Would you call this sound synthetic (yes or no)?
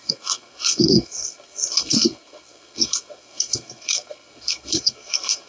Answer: yes